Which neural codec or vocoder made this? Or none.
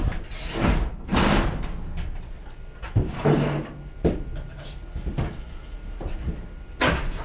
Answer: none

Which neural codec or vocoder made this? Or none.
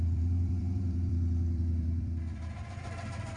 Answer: vocoder, BigVGAN v2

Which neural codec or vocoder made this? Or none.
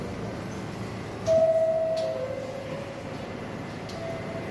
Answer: none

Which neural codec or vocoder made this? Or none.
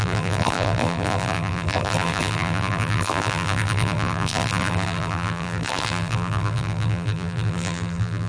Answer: vocoder, BigVGAN v2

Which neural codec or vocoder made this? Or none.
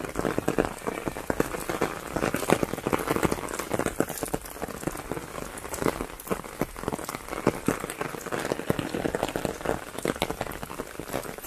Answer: none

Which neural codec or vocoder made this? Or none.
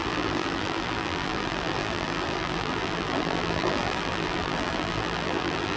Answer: vocoder, BigVGAN v2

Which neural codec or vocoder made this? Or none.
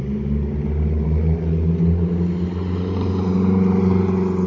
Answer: none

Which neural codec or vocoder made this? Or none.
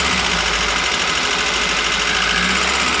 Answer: none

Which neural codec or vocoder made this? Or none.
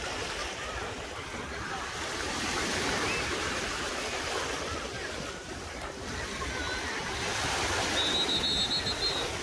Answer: none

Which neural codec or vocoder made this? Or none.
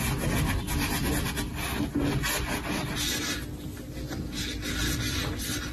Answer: none